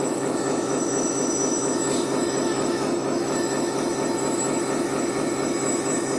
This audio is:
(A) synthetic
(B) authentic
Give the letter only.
A